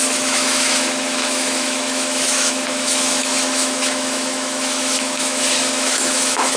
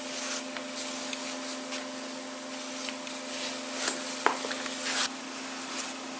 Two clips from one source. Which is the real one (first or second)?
second